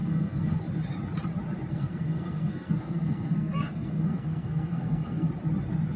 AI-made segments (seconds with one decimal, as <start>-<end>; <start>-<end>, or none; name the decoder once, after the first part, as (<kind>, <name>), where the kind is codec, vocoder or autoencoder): 0.0-0.6 (codec, SNAC); 1.7-5.3